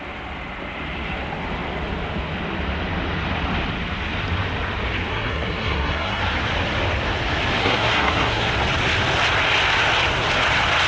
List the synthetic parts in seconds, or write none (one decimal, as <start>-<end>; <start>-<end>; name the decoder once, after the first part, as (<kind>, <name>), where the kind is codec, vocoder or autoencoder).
5.1-6.2 (codec, SNAC); 7.6-8.5